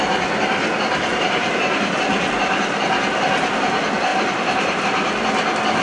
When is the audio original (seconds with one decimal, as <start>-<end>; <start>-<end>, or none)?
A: 0.0-1.1; 2.0-4.1; 4.8-5.8